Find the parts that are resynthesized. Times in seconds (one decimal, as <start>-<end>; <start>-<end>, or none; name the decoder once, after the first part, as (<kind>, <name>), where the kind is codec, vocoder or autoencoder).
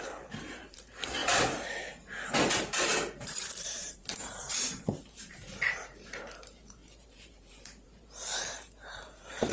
0.0-1.2 (vocoder, BigVGAN v2); 2.5-2.9; 3.4-9.5